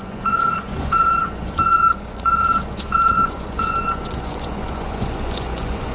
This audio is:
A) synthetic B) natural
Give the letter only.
A